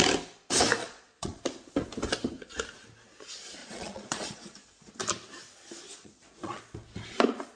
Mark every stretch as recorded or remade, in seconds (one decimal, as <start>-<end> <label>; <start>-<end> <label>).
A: 0.0-0.8 recorded; 0.8-1.4 remade; 1.4-3.6 recorded; 3.6-4.9 remade; 4.9-5.9 recorded; 5.9-6.6 remade; 6.6-7.6 recorded